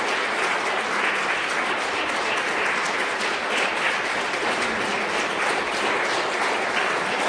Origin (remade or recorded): recorded